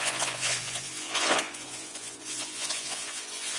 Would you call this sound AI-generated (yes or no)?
yes